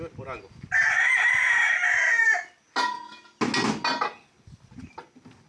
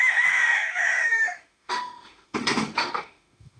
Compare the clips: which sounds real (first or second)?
first